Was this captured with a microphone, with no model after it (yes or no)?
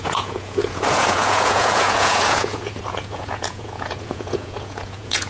no